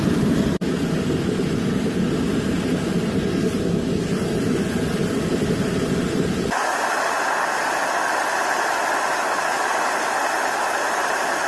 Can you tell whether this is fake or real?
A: real